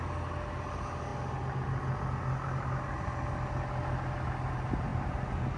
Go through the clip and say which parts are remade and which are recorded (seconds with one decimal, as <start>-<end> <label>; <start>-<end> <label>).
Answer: 0.0-5.6 recorded